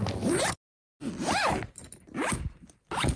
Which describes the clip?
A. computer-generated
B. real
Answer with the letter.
B